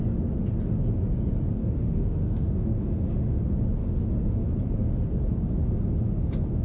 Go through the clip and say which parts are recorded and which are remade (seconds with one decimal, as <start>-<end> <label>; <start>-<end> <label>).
0.0-1.6 recorded; 1.6-3.4 remade; 3.4-3.8 recorded; 3.8-4.5 remade; 4.5-6.6 recorded